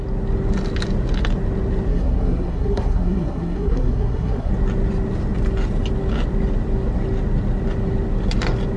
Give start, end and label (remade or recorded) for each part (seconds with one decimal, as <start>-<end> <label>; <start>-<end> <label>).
0.0-1.9 recorded; 1.9-4.5 remade; 4.5-8.8 recorded